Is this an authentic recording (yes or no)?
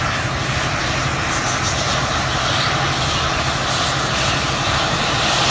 yes